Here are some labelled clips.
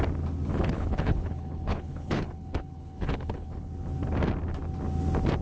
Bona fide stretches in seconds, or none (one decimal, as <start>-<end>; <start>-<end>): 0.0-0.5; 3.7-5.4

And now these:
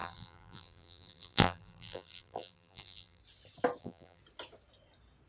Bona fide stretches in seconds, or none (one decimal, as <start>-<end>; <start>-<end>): 3.2-3.8; 4.2-5.3

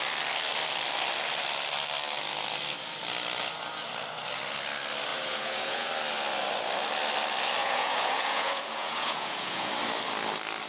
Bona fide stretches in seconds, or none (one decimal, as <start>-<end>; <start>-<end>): 0.0-5.1; 5.9-7.6; 9.7-10.7

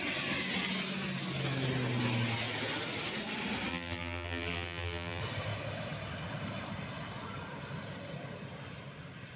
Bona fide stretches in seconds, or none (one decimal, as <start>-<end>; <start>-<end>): 0.0-3.7; 5.2-9.4